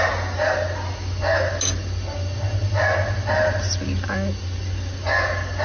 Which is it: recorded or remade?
recorded